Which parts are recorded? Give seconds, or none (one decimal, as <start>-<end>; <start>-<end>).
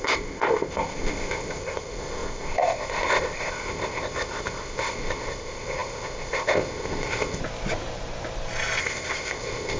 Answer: 7.4-8.8